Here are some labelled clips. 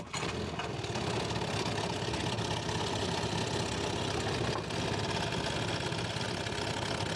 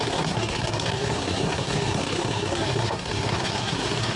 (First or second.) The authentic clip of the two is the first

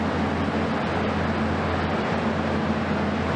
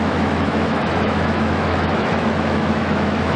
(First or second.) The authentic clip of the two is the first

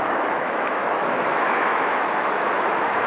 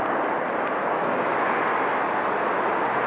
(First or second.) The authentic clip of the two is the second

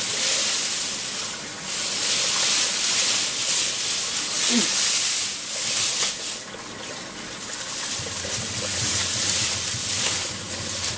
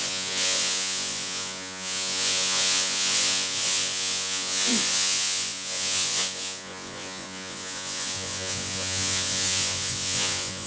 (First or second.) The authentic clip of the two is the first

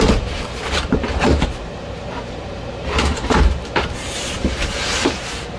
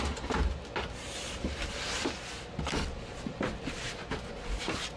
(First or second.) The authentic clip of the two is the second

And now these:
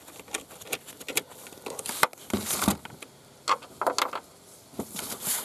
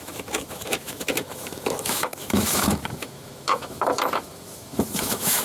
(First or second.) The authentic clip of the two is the first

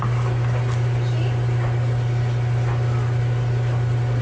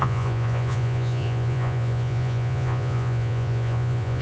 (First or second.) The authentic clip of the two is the first